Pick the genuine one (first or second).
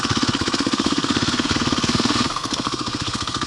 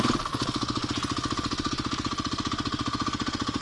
second